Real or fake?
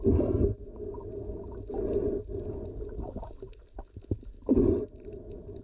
real